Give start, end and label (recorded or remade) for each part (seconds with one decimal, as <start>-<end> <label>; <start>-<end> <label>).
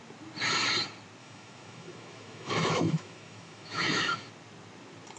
0.0-1.2 recorded; 1.2-4.3 remade; 4.3-5.2 recorded